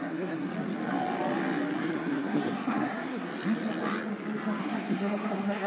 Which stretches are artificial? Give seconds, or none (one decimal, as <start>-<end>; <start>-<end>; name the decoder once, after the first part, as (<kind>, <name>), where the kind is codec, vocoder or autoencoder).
0.0-0.5 (codec, SNAC); 1.8-3.3; 4.6-5.7